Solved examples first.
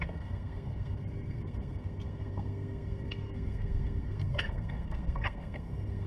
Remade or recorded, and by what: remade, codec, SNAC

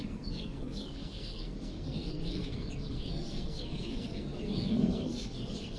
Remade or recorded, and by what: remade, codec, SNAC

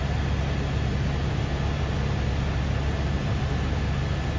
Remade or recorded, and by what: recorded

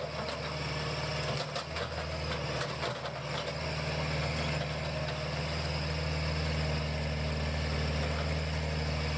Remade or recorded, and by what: recorded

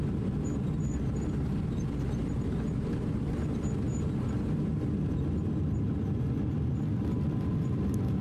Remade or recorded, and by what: recorded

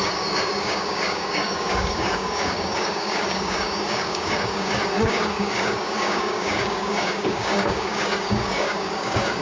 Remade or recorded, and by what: remade, codec, DAC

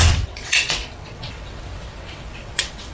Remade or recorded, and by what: remade, vocoder, WaveNeXt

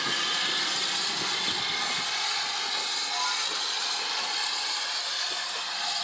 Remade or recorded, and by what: recorded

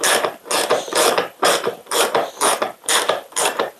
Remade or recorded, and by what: remade, vocoder, BigVGAN v2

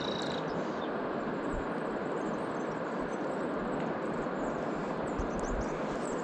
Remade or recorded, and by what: recorded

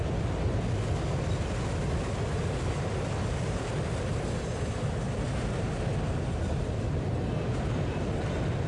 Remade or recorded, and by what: recorded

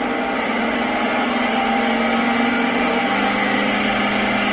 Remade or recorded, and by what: recorded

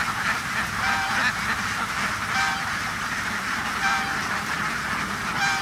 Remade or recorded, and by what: recorded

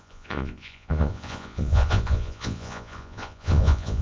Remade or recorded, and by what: remade, vocoder, Vocos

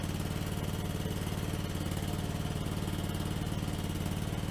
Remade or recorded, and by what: recorded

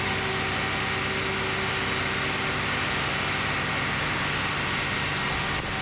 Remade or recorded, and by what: recorded